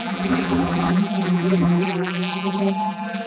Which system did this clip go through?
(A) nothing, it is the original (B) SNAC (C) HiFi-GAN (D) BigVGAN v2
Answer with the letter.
D